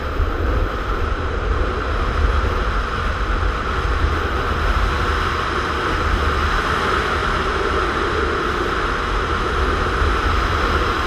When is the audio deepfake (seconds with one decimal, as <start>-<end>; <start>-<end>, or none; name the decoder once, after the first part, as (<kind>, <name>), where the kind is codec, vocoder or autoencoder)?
none